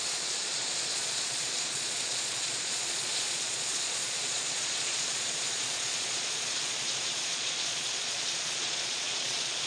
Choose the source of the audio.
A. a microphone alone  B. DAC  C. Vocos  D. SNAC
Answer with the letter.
C